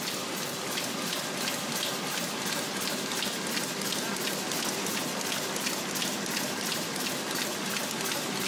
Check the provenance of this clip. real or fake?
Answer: real